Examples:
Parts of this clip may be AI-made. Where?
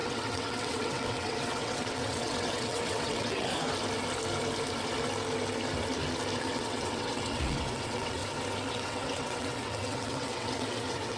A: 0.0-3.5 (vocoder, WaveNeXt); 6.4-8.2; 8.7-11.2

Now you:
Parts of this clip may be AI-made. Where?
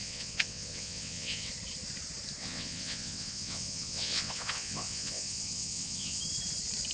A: 0.0-1.5 (vocoder, WaveNeXt); 2.4-6.2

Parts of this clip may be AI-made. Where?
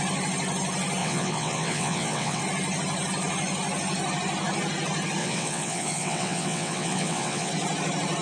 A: 1.0-2.4 (vocoder, WaveNeXt); 5.2-7.5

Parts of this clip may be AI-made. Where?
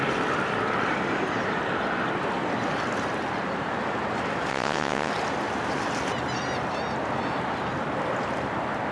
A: 4.5-5.1 (vocoder, WaveNeXt)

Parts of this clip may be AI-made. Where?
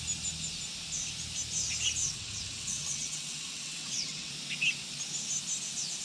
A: 2.0-4.3 (vocoder, WaveNeXt)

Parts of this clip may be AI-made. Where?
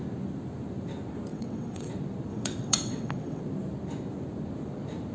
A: 1.3-1.9 (vocoder, WaveNeXt); 2.3-3.4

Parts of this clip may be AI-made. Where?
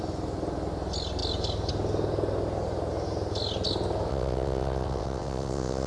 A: 4.1-5.9 (vocoder, WaveNeXt)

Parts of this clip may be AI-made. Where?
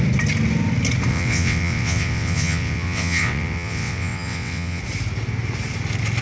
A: 1.1-4.8 (vocoder, WaveNeXt)